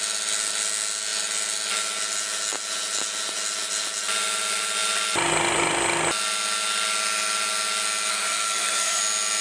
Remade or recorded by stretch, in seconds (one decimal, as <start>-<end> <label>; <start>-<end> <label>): 0.0-8.1 recorded; 8.1-9.0 remade; 9.0-9.4 recorded